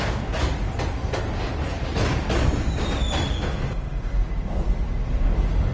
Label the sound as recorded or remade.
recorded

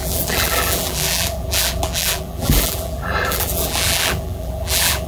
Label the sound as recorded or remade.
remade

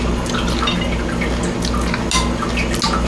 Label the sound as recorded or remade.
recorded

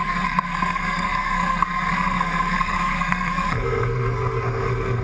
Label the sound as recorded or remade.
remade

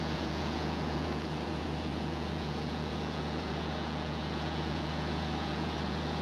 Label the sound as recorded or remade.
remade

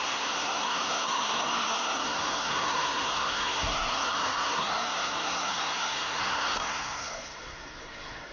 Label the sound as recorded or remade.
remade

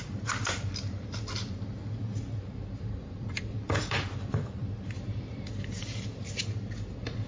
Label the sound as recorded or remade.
remade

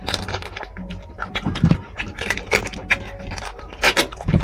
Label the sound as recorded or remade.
recorded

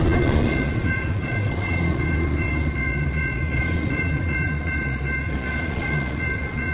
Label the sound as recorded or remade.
remade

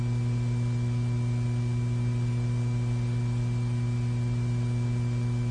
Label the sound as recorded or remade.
recorded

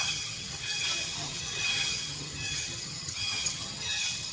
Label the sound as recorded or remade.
remade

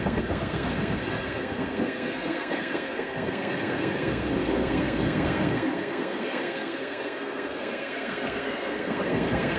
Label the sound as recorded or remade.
remade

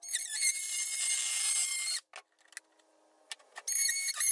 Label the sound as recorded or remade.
recorded